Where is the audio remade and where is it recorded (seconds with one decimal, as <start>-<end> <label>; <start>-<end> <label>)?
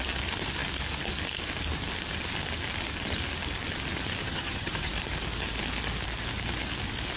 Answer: 0.0-4.2 recorded; 4.2-4.9 remade; 4.9-7.2 recorded